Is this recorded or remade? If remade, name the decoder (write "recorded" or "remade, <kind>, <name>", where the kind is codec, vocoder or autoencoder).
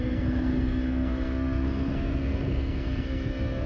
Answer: remade, codec, SNAC